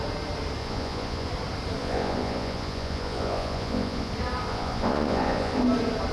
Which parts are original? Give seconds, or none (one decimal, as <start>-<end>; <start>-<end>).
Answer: 0.0-0.6; 1.3-1.8; 4.1-4.5; 5.6-6.1